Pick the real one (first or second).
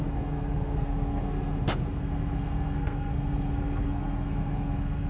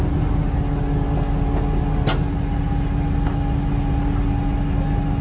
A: second